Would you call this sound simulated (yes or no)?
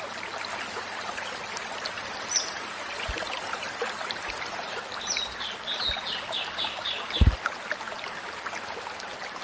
no